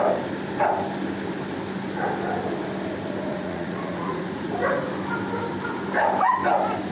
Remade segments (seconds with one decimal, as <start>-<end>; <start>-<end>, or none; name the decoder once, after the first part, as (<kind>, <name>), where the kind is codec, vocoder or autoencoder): 3.3-4.5 (vocoder, Vocos)